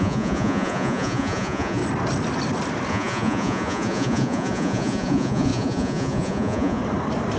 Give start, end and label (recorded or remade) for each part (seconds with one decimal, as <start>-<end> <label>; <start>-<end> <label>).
0.0-1.8 remade; 1.8-2.9 recorded; 2.9-6.8 remade; 6.8-7.4 recorded